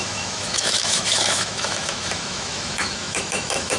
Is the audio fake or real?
fake